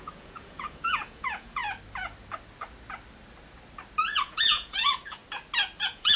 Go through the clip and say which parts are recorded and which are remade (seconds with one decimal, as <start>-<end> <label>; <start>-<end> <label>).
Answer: 0.0-1.6 remade; 1.6-4.0 recorded; 4.0-5.2 remade; 5.2-5.8 recorded; 5.8-6.2 remade